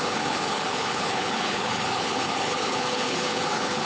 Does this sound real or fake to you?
fake